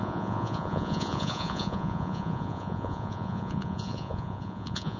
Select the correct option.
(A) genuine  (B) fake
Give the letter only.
B